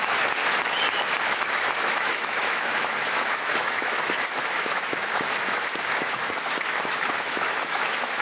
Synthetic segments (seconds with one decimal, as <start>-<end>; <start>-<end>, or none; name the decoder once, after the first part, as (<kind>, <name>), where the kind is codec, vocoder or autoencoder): 0.0-0.4 (autoencoder, DAC-VAE); 1.2-8.2